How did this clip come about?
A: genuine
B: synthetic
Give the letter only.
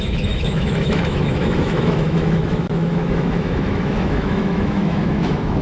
B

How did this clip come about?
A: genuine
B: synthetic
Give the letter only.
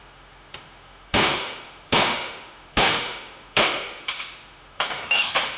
B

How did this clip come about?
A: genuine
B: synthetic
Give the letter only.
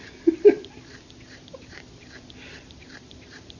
A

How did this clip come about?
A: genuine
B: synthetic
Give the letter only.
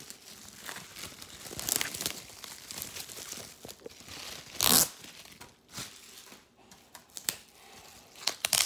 A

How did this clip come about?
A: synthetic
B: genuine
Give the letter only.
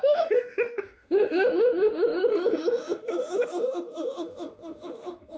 A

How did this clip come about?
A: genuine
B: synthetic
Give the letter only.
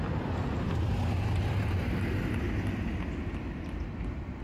A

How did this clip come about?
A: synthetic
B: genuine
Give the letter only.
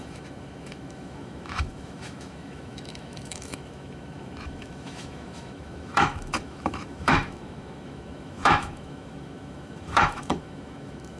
A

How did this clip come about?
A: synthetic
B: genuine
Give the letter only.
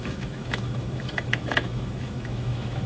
A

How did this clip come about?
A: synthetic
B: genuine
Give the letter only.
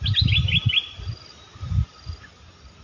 B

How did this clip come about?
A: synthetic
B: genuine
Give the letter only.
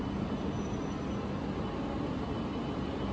B